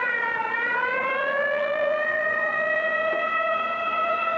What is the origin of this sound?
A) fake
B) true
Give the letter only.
A